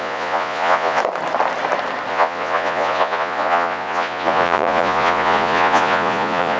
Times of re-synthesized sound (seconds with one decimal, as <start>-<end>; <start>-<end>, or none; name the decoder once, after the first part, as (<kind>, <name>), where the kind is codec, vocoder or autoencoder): 0.0-1.0 (vocoder, Vocos); 2.1-6.6